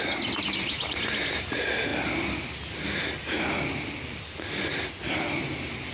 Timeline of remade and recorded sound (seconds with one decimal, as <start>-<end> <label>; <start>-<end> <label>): 0.0-5.9 recorded